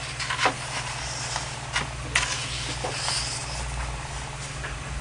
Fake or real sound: real